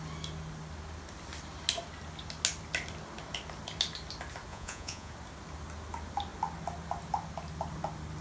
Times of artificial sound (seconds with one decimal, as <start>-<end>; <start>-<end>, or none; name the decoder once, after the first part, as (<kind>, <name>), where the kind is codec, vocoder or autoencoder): 4.5-5.1 (vocoder, Vocos)